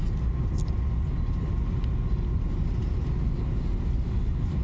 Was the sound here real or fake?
real